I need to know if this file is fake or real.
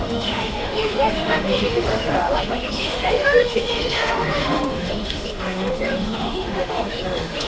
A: fake